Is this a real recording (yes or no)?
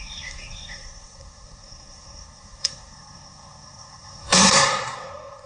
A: no